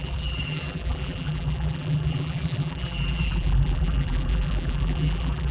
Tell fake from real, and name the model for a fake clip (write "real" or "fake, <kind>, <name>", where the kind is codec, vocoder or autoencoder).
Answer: fake, vocoder, BigVGAN v2